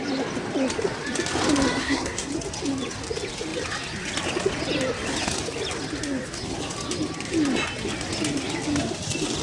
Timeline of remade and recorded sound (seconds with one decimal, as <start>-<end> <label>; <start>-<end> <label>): 0.0-1.8 recorded; 1.8-2.3 remade; 2.3-9.4 recorded